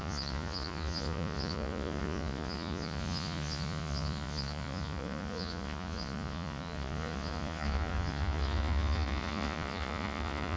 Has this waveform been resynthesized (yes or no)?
yes